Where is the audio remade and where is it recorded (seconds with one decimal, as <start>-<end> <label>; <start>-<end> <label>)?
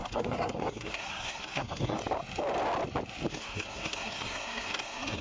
0.0-2.0 remade; 2.0-3.3 recorded; 3.3-5.2 remade